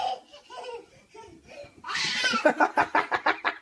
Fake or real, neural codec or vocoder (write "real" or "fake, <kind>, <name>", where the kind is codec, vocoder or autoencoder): real